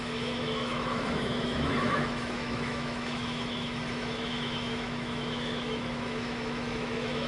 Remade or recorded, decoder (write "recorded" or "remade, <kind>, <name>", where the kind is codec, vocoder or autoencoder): remade, autoencoder, DAC-VAE